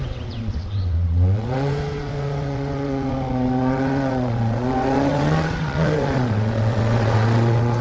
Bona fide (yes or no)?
no